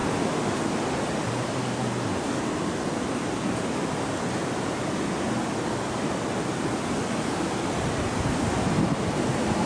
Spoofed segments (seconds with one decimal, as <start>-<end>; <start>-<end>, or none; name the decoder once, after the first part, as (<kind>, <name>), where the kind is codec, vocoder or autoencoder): none